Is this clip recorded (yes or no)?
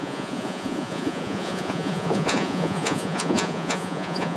no